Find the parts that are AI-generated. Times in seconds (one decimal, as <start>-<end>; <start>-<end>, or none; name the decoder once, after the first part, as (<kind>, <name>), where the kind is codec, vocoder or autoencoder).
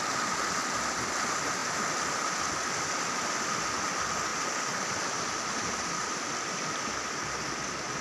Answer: 4.3-7.2 (vocoder, BigVGAN v2)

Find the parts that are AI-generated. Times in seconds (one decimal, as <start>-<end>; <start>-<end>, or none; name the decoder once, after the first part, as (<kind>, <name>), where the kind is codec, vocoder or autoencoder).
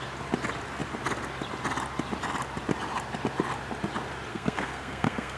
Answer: 4.3-5.4 (codec, SNAC)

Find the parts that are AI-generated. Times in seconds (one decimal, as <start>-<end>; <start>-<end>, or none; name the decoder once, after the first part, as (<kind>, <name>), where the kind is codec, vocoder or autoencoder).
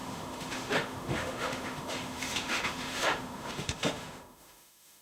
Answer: 0.0-5.0 (autoencoder, DAC-VAE)